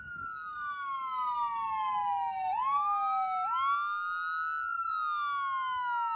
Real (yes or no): yes